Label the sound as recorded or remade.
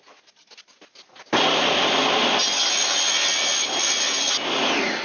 recorded